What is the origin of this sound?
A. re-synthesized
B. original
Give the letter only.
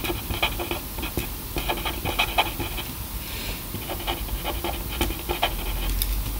B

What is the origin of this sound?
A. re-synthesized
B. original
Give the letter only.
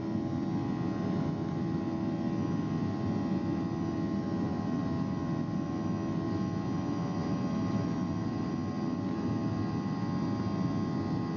B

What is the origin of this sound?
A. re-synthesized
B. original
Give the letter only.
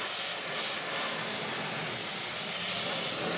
B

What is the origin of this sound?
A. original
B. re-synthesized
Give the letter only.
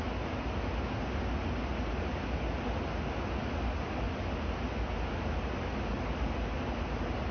A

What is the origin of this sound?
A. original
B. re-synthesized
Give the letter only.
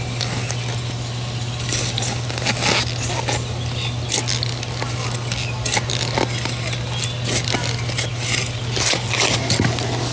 A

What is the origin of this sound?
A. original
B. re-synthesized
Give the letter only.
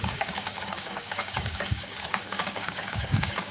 B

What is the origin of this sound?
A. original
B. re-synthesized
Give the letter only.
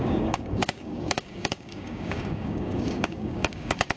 B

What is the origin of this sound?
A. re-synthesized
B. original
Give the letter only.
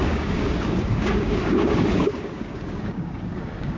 A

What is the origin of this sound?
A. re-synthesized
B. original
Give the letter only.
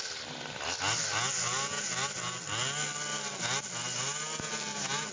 B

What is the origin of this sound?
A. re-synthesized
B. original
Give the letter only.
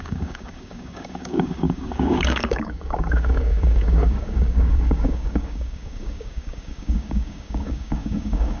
A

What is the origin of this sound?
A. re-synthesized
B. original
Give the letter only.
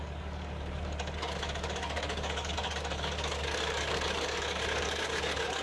A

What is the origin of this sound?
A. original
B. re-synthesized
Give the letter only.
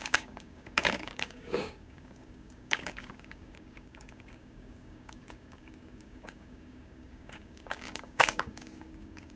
B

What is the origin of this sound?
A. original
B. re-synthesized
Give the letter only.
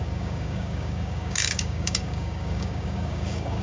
B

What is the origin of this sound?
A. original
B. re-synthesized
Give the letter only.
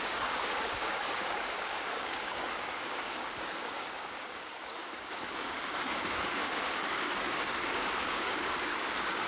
B